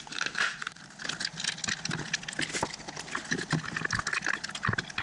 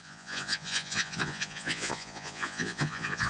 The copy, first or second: second